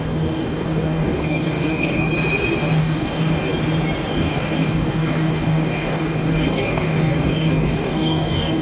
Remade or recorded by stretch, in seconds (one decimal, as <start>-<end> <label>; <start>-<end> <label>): 0.0-2.0 remade; 2.0-2.8 recorded; 2.8-3.5 remade; 3.5-4.1 recorded; 4.1-8.6 remade